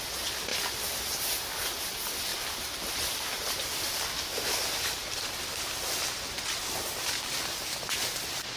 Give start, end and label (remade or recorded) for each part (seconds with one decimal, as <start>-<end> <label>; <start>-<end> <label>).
0.0-0.5 recorded; 0.5-1.8 remade; 1.8-2.3 recorded; 2.3-5.5 remade; 5.5-8.6 recorded